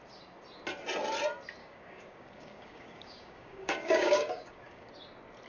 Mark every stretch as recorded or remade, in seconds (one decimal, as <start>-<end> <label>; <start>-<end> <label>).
0.0-1.6 recorded; 1.6-4.9 remade; 4.9-5.5 recorded